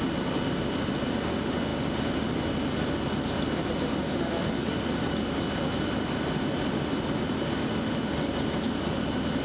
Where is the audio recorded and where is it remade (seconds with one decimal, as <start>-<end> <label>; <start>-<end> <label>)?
0.0-9.4 recorded